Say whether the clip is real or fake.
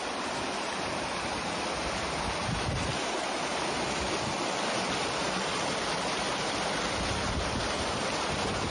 real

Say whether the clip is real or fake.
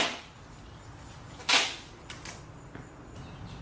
real